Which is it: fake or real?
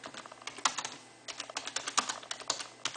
real